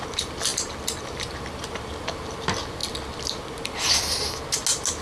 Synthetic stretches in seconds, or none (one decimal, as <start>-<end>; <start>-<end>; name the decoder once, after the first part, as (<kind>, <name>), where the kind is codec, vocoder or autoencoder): none